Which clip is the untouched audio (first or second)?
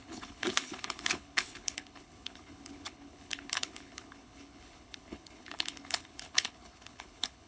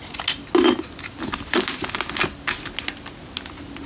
second